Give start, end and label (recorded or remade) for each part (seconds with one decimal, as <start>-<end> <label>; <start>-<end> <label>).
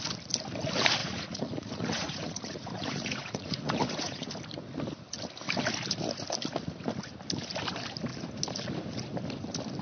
0.0-1.0 recorded; 1.0-4.3 remade; 4.3-9.8 recorded